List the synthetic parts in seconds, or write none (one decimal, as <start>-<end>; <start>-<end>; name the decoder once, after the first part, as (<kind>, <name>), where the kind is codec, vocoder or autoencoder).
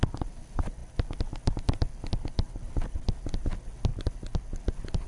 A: none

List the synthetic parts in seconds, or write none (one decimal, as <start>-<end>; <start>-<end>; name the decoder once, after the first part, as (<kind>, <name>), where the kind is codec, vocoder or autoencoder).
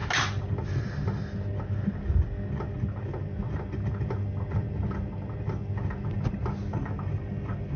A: none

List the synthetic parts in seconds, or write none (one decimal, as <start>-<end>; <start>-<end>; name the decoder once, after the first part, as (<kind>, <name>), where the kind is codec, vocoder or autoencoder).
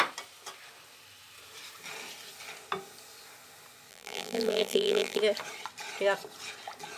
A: 3.9-5.2 (vocoder, BigVGAN v2)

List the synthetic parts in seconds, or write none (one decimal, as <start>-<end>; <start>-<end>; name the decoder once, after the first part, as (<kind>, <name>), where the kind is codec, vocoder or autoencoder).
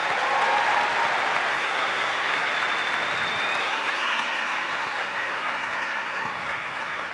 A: 1.5-2.5 (codec, SNAC); 3.6-7.1